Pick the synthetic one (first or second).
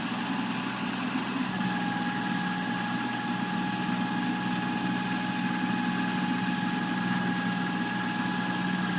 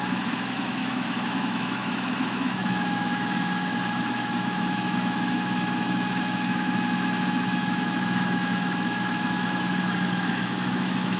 second